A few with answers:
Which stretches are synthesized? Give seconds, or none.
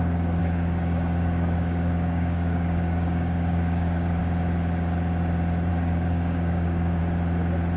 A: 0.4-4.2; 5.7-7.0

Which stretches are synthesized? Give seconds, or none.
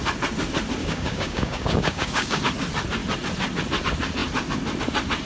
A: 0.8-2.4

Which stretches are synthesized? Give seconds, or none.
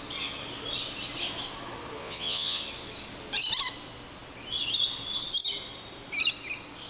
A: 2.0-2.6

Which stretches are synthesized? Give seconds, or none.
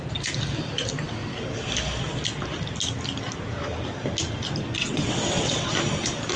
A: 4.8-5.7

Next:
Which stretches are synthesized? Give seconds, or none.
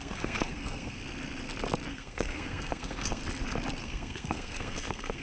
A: 0.0-1.0; 1.9-3.2; 3.8-5.2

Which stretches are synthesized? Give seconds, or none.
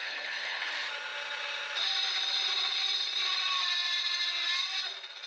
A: 0.0-0.7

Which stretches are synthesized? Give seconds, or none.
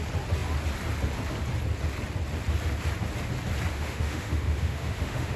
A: 3.7-5.4